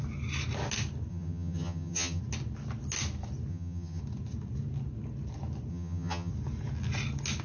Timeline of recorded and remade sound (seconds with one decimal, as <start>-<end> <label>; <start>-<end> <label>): 0.0-1.1 recorded; 1.1-2.2 remade; 2.2-3.5 recorded; 3.5-4.0 remade; 4.0-5.7 recorded; 5.7-6.3 remade; 6.3-7.4 recorded